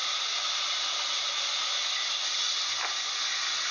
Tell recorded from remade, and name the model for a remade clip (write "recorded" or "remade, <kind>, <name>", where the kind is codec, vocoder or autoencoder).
recorded